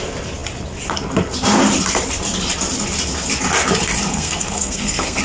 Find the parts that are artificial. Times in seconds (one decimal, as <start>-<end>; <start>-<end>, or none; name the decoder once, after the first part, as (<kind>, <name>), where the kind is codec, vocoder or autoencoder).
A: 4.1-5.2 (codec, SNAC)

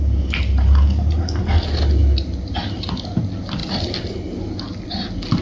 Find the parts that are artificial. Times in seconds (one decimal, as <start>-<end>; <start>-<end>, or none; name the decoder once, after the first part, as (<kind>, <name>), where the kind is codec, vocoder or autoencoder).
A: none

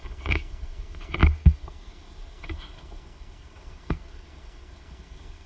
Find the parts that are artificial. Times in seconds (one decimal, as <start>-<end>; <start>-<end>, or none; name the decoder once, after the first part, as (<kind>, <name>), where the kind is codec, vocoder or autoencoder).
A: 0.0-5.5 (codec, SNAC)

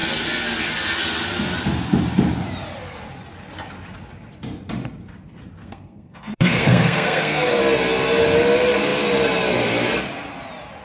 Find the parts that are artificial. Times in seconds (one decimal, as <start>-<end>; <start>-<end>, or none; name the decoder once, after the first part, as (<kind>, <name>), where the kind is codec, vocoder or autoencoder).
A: 5.6-7.6 (codec, SNAC)

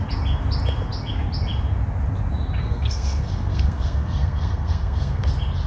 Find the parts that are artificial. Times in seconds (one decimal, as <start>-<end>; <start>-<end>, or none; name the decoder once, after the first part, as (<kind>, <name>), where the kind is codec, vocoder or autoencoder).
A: 2.6-5.3 (codec, SNAC)